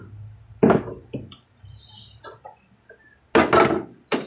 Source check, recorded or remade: recorded